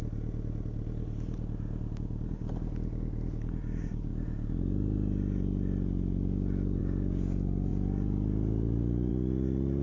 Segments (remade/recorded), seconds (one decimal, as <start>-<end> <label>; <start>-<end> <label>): 0.0-9.8 recorded